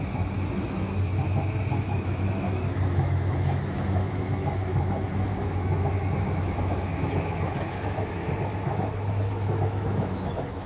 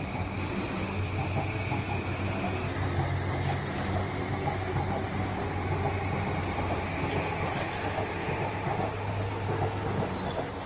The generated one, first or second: first